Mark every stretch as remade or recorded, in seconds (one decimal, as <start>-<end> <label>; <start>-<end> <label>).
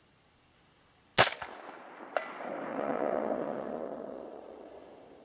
0.0-2.7 recorded; 2.7-4.8 remade; 4.8-5.2 recorded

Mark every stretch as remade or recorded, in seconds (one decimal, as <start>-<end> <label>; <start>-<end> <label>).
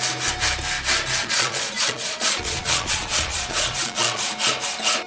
0.0-1.2 recorded; 1.2-4.3 remade; 4.3-5.1 recorded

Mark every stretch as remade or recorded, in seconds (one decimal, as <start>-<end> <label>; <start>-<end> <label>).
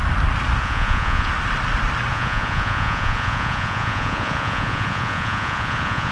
0.0-0.6 recorded; 0.6-1.3 remade; 1.3-2.1 recorded; 2.1-6.1 remade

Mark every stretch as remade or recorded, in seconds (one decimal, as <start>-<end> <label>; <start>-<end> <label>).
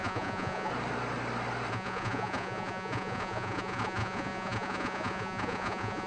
0.0-0.7 remade; 0.7-1.7 recorded; 1.7-6.1 remade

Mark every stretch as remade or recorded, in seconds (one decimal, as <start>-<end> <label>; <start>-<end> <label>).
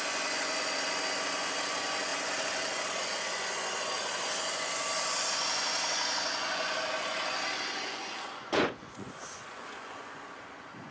0.0-10.9 remade